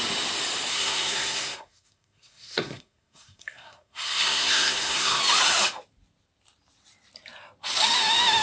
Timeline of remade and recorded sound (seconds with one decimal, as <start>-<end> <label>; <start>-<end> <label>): 0.0-0.7 recorded; 0.7-5.2 remade; 5.2-8.4 recorded